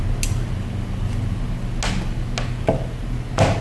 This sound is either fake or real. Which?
real